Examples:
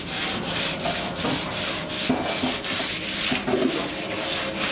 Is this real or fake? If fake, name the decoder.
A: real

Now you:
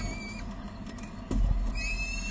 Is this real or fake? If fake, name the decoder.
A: real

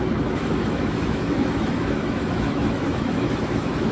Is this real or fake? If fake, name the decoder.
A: fake, autoencoder, DAC-VAE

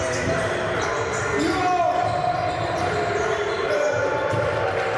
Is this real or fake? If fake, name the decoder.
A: real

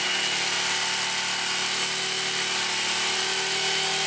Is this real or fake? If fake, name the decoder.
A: real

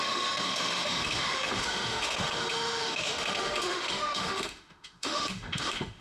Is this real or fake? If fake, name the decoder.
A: fake, autoencoder, DAC-VAE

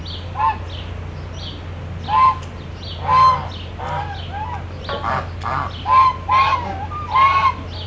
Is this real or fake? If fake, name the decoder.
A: real